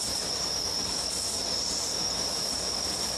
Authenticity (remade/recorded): recorded